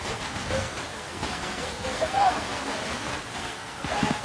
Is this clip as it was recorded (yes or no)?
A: no